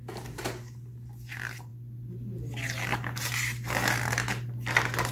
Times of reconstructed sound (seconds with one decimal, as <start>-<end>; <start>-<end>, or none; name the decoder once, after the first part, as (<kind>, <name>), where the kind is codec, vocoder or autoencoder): none